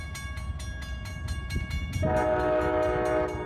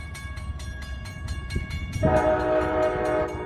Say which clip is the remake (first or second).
second